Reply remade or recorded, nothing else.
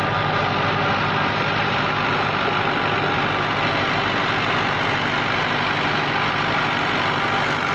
recorded